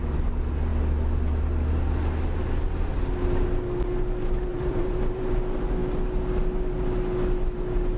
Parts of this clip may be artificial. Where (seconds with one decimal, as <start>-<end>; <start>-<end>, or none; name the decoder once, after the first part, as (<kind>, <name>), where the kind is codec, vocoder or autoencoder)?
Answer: 4.5-5.3 (vocoder, BigVGAN v2)